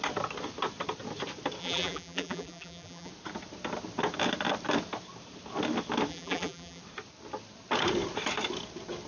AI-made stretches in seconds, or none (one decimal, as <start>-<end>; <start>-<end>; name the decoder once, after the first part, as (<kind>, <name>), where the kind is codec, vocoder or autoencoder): 1.6-3.1 (vocoder, BigVGAN v2); 6.1-6.8